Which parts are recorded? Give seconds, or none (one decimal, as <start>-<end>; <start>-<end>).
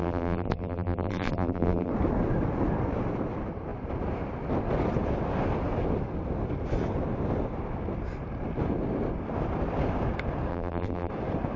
1.9-10.5; 11.1-11.6